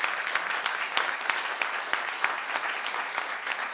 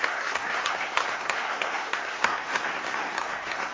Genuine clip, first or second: first